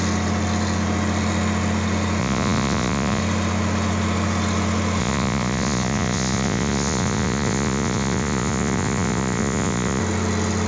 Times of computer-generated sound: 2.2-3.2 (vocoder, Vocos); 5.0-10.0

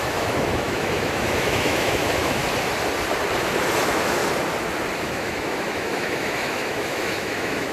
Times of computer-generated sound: 0.0-2.4 (autoencoder, DAC-VAE); 3.8-4.2; 5.0-7.7

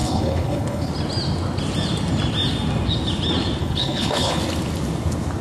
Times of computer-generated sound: 0.0-0.9 (codec, HILCodec); 3.6-4.4

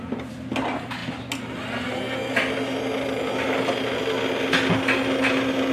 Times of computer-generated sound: none

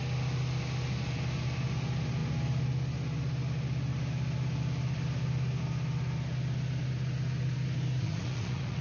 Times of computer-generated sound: 8.0-8.8 (vocoder, Vocos)

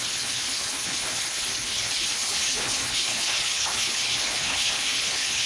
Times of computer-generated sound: 0.0-5.5 (codec, HILCodec)

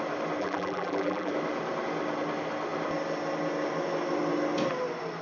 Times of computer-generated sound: 0.4-1.3 (vocoder, BigVGAN v2)